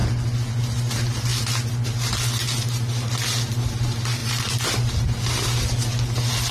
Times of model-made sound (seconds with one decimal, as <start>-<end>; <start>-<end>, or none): none